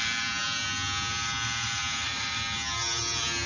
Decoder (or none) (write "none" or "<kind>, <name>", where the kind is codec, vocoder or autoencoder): none